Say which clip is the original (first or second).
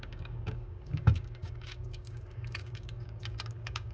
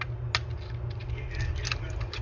second